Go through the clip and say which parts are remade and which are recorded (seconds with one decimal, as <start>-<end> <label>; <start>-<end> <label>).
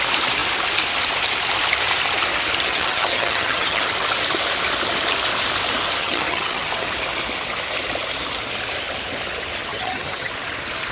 0.0-2.7 recorded; 2.7-3.8 remade; 3.8-6.0 recorded; 6.0-6.7 remade; 6.7-9.7 recorded; 9.7-10.3 remade; 10.3-10.9 recorded